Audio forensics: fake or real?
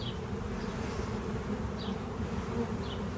real